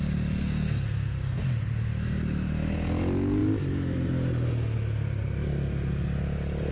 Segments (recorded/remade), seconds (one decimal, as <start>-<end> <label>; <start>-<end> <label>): 0.0-0.4 recorded; 0.4-1.4 remade; 1.4-6.7 recorded